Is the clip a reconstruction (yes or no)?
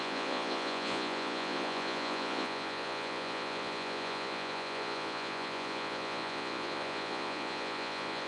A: yes